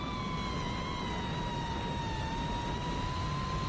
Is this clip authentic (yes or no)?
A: yes